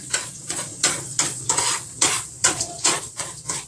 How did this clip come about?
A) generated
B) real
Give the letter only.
A